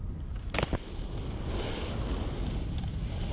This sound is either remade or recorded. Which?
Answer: recorded